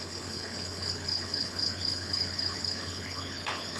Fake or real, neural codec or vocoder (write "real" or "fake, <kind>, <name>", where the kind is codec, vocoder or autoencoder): fake, codec, HILCodec